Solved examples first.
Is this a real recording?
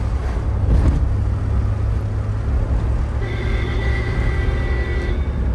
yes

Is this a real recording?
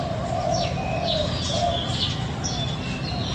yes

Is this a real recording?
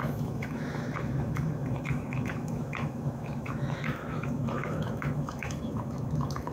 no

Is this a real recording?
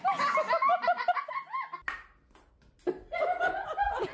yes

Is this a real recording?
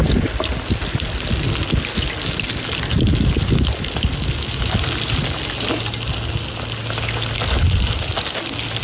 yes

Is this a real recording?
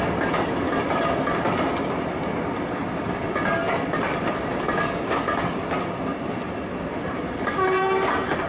yes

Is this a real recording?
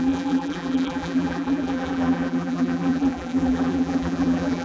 no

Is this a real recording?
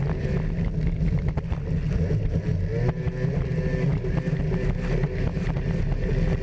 yes